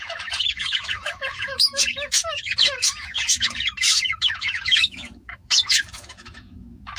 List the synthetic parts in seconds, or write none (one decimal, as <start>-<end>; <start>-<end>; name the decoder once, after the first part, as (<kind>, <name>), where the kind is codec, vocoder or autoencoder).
0.0-7.0 (autoencoder, DAC-VAE)